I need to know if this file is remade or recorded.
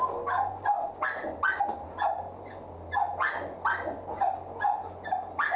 recorded